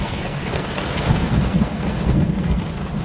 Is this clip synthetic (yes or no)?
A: yes